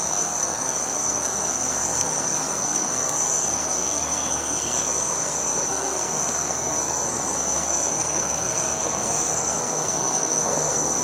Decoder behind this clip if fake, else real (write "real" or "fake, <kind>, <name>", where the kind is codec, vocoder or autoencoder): fake, codec, SNAC